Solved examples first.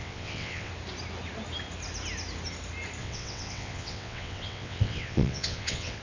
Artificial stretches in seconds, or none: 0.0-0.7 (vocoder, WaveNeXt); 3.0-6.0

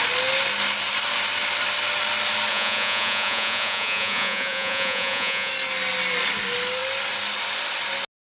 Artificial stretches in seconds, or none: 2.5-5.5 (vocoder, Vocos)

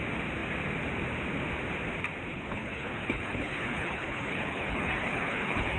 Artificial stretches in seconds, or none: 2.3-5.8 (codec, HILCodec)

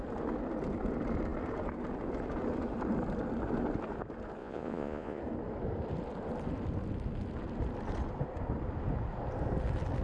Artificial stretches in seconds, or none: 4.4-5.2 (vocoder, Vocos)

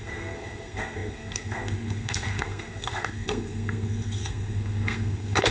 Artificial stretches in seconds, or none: 0.0-5.5 (codec, SNAC)

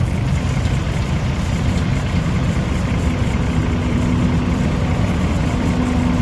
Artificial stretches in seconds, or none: 1.9-2.9 (vocoder, BigVGAN v2)

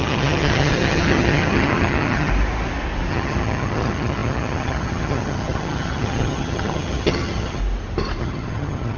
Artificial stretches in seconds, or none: 0.0-2.3 (vocoder, HiFi-GAN); 3.1-7.6; 8.2-9.0

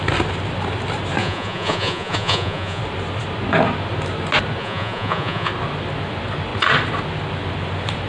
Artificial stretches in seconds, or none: 1.2-2.8 (vocoder, Vocos); 4.6-5.5